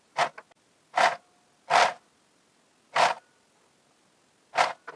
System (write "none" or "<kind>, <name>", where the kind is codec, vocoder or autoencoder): none